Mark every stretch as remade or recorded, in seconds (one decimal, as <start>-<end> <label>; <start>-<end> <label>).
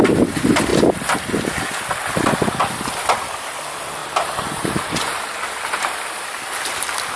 0.0-7.2 recorded